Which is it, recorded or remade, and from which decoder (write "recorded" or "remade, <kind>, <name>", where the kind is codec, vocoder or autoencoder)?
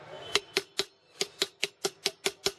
recorded